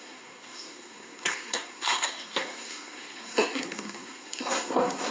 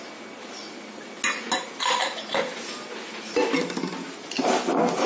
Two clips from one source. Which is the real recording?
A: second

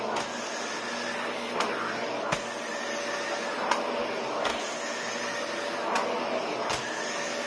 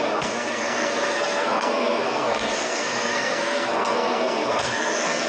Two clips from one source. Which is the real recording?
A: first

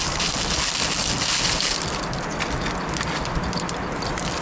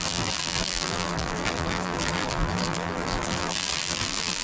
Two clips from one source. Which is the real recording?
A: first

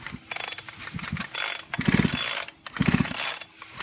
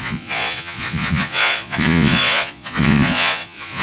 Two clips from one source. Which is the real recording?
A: first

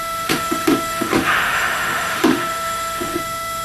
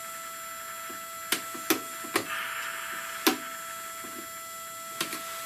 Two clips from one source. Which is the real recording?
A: second